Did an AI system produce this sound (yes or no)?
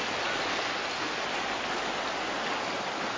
no